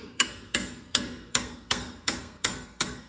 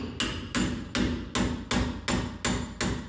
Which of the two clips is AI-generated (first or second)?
first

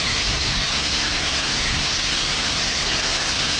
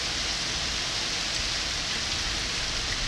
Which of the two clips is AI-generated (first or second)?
first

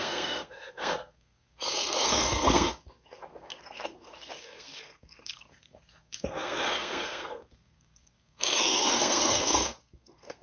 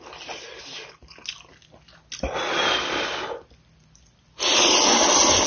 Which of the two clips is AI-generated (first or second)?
first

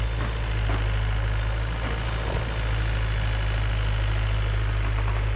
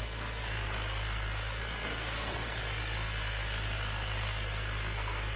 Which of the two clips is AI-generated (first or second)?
second